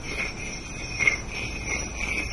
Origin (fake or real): real